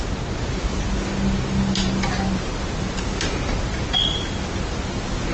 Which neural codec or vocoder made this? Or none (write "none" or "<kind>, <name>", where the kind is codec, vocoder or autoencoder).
none